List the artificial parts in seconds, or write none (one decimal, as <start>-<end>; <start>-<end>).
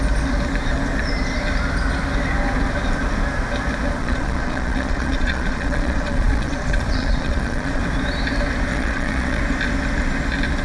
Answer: 4.0-7.8; 8.7-9.4